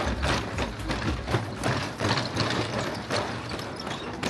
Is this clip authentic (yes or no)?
yes